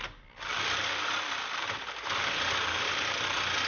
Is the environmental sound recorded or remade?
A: recorded